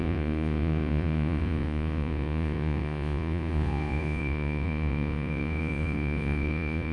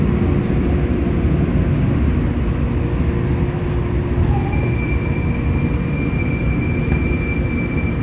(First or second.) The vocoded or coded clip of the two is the first